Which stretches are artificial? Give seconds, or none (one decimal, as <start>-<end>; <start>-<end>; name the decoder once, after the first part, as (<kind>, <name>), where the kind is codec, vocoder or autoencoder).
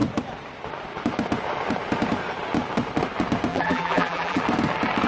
3.5-4.4 (vocoder, BigVGAN v2)